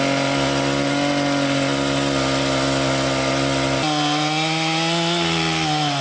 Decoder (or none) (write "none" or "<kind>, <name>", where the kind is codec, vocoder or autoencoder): none